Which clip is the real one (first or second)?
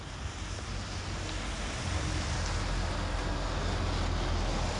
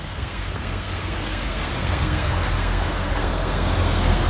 first